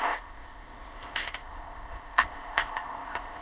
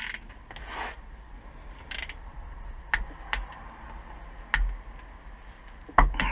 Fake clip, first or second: first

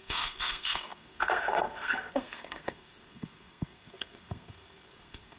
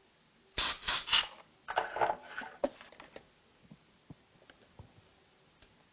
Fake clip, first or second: first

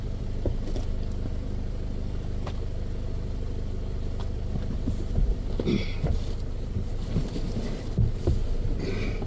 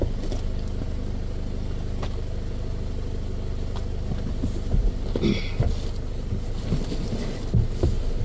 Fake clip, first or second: first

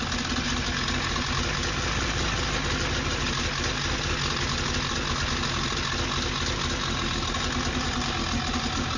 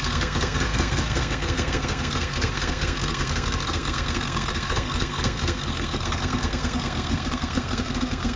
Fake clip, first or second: second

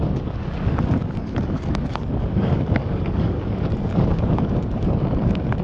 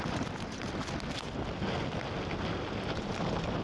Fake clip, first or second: first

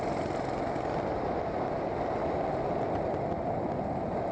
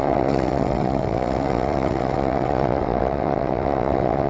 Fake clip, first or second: second